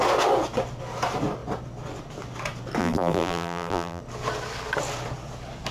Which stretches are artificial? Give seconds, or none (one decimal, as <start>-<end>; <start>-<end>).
2.8-4.0